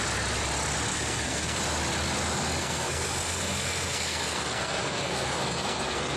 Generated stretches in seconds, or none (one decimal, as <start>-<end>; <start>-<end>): 0.9-1.6; 2.6-6.2